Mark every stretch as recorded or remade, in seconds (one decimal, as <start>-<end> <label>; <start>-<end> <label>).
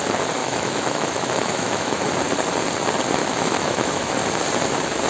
0.0-0.4 recorded; 0.4-2.1 remade; 2.1-3.2 recorded; 3.2-4.1 remade; 4.1-5.1 recorded